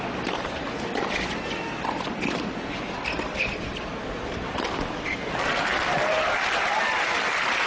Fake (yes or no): no